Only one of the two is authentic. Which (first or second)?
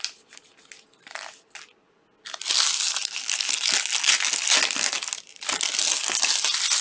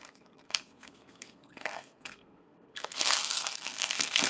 first